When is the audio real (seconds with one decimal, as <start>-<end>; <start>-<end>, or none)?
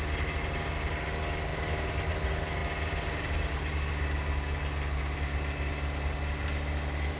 0.0-7.2